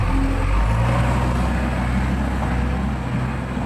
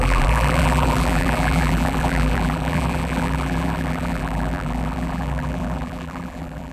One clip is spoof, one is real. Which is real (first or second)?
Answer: first